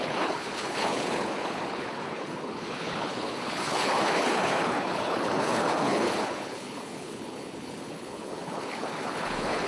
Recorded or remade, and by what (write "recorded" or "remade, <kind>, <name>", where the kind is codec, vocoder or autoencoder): remade, codec, HILCodec